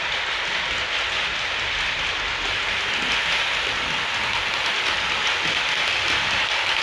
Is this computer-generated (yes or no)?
no